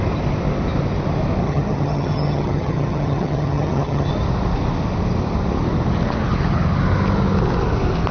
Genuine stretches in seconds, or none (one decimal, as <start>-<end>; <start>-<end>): 0.0-1.4; 4.1-8.1